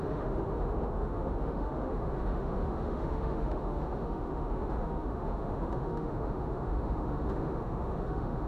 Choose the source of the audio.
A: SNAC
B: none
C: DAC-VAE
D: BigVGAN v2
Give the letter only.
C